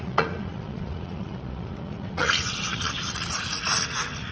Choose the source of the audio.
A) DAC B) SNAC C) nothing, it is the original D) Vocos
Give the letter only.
D